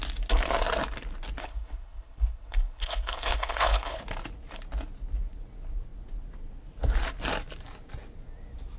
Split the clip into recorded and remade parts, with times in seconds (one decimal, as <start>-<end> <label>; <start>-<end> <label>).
0.0-1.4 recorded; 1.4-4.0 remade; 4.0-8.8 recorded